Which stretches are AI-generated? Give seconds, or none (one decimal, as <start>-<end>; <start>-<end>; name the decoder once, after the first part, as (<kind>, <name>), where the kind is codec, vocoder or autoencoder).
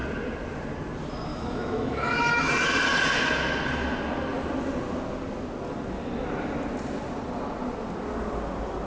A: 1.3-2.5 (autoencoder, DAC-VAE)